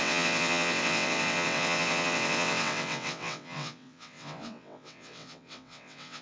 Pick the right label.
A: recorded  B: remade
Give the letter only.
B